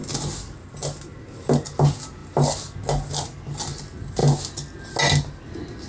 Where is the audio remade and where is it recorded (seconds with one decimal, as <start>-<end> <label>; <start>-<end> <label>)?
0.0-5.9 recorded